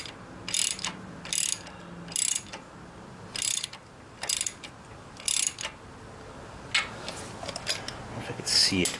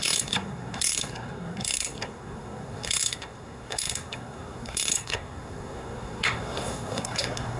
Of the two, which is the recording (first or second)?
first